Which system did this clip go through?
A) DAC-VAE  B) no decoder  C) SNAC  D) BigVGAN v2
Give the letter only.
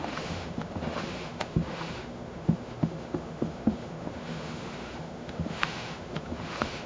A